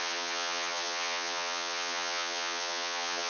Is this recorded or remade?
remade